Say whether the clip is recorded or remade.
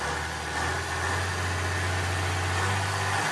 recorded